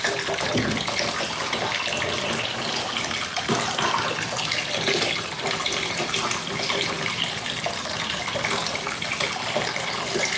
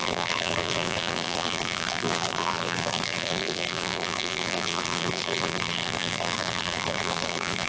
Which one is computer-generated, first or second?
second